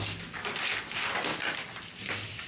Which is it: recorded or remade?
recorded